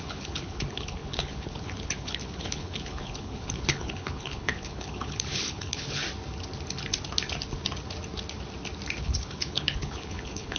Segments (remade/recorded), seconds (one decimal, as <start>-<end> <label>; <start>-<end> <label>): 0.0-6.0 remade; 6.0-9.0 recorded; 9.0-10.6 remade